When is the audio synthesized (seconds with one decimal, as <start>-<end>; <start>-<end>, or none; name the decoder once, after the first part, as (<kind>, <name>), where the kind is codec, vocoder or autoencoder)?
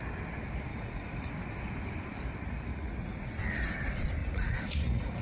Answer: 0.7-1.3 (vocoder, Vocos); 2.7-3.3; 4.2-5.2